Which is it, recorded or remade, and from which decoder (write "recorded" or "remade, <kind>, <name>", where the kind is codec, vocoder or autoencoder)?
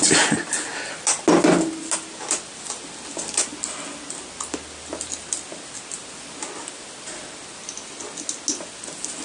recorded